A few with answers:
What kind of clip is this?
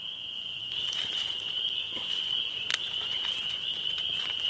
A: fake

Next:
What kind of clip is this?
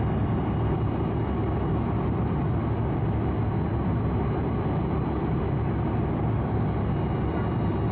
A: real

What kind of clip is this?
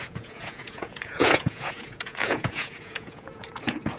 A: fake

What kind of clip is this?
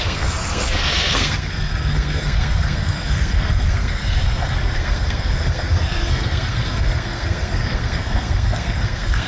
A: fake